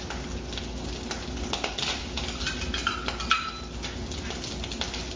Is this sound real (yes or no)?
yes